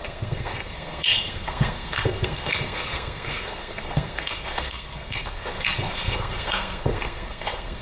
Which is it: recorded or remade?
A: remade